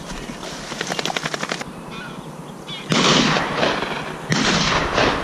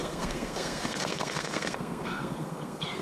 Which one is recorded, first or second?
first